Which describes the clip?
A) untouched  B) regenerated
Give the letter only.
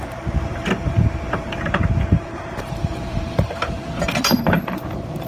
B